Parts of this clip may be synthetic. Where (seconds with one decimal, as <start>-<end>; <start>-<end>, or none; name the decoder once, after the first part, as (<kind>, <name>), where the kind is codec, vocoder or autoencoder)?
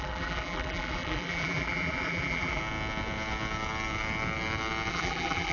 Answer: 0.0-2.6 (vocoder, BigVGAN v2); 4.9-5.5